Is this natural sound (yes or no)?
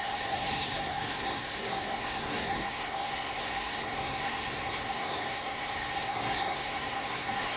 no